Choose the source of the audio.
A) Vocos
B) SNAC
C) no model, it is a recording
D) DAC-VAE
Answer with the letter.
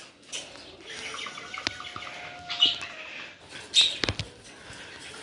C